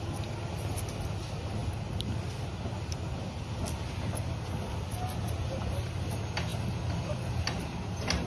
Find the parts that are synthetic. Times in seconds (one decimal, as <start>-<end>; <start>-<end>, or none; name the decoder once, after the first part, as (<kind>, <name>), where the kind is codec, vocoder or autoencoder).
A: none